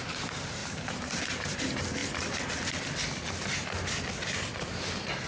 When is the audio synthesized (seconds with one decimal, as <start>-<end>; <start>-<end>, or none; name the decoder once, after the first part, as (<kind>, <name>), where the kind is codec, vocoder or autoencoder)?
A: 0.0-2.0 (vocoder, BigVGAN v2)